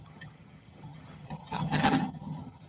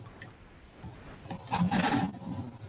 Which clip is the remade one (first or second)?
first